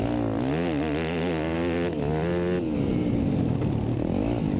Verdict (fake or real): real